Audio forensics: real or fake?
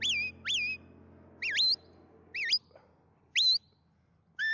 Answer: real